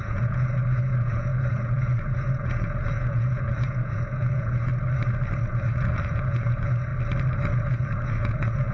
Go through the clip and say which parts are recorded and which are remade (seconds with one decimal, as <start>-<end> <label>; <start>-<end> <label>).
0.0-4.7 remade; 4.7-5.4 recorded; 5.4-6.9 remade; 6.9-7.7 recorded; 7.7-8.7 remade